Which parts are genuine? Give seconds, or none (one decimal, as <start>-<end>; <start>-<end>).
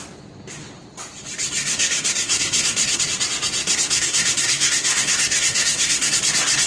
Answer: 0.0-1.6; 3.0-3.6; 6.2-6.7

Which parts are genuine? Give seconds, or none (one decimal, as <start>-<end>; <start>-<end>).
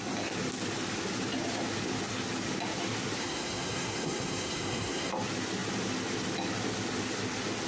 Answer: 0.0-3.2; 5.1-7.7